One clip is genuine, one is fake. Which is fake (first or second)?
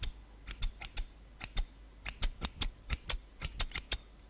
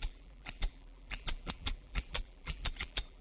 second